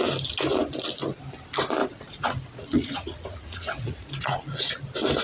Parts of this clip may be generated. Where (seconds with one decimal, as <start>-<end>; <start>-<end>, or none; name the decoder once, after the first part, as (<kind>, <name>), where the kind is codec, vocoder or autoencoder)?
1.8-4.6 (vocoder, Vocos)